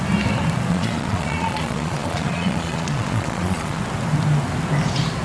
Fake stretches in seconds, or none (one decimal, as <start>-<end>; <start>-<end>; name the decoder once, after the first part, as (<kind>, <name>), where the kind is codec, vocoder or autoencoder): 0.7-3.8 (vocoder, Vocos)